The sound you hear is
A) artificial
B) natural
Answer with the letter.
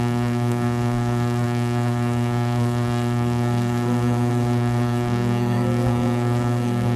A